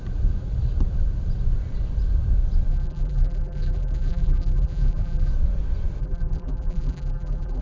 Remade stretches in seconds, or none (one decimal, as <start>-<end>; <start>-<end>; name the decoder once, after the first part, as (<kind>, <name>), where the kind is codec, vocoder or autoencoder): 2.7-5.3 (vocoder, BigVGAN v2); 6.0-7.6